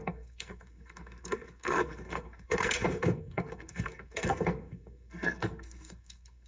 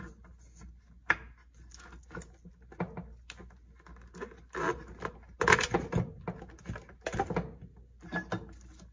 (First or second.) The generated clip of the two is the first